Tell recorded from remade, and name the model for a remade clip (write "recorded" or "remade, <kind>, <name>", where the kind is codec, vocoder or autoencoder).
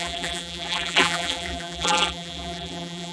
remade, vocoder, BigVGAN v2